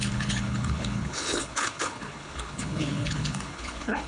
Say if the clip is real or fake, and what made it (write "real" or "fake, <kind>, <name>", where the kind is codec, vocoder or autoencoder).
fake, codec, HILCodec